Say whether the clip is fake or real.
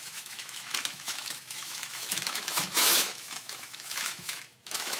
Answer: fake